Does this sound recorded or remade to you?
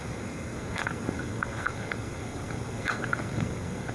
remade